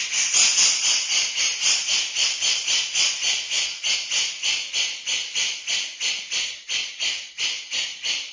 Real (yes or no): yes